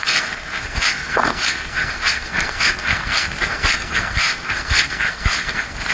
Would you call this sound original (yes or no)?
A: no